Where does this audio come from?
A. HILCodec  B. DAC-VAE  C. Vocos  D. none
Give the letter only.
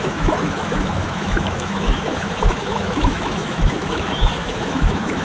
B